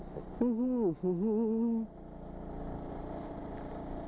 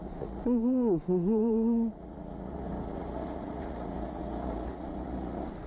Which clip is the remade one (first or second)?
second